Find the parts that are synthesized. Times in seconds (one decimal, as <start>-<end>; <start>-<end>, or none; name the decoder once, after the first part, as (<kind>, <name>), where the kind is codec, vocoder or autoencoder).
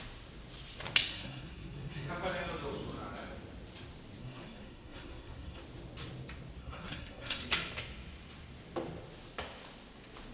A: 1.1-2.1 (codec, SNAC); 4.2-5.6; 6.6-7.4